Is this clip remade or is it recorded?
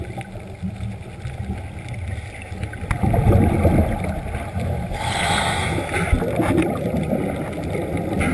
recorded